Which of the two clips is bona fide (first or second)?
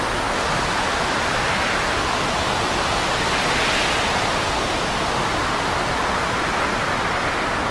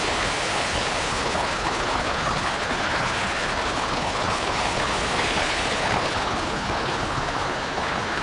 first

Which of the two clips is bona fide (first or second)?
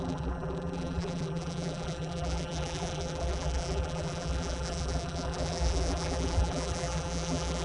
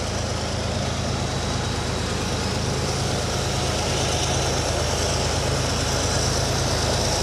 second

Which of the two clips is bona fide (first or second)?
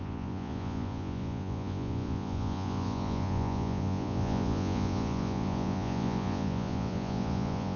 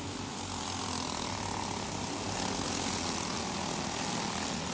second